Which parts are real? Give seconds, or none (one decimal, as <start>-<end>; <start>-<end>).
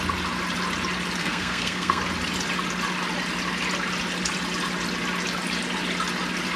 0.0-1.2; 2.0-6.6